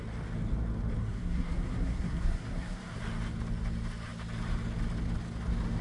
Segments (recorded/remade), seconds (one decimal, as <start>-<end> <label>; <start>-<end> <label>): 0.0-1.0 recorded; 1.0-3.0 remade; 3.0-5.8 recorded